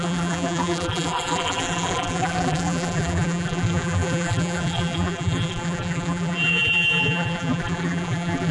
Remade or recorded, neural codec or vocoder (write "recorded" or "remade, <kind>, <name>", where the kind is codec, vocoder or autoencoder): remade, vocoder, BigVGAN v2